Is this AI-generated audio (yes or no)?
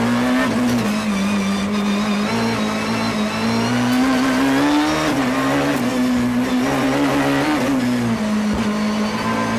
no